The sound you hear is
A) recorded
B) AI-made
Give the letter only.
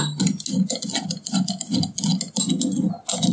A